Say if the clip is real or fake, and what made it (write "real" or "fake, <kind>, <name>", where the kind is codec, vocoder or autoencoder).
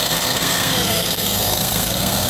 fake, codec, SNAC